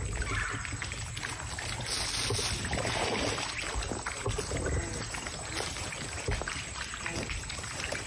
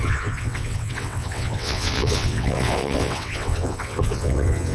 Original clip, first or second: first